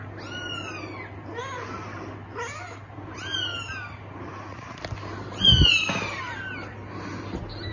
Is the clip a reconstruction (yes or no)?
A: no